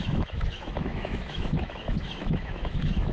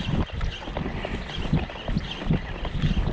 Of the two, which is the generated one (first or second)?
first